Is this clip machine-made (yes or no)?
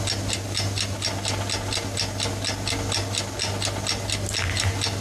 no